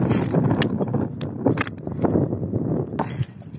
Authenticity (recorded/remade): recorded